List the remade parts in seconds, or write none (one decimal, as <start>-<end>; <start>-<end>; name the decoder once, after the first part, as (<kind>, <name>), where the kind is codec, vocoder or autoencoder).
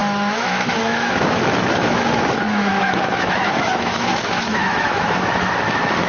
0.0-6.1 (autoencoder, DAC-VAE)